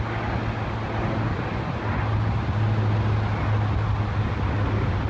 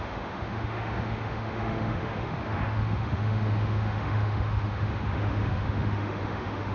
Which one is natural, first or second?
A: first